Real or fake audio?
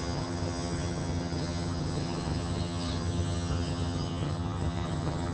fake